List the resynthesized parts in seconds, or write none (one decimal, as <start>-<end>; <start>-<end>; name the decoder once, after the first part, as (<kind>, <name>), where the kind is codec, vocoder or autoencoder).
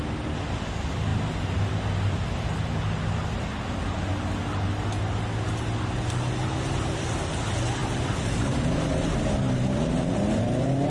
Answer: none